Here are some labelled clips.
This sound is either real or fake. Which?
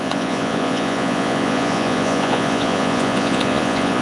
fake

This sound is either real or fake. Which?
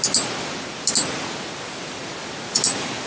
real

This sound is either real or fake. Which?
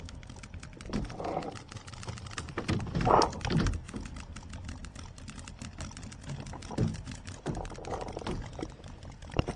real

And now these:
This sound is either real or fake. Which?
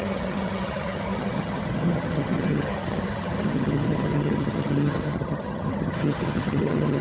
fake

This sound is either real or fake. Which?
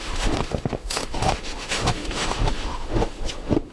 fake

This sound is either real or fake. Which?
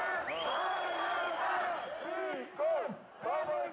real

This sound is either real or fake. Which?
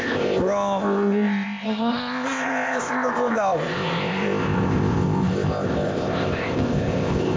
fake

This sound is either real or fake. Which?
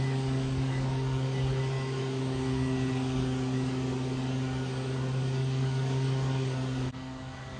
fake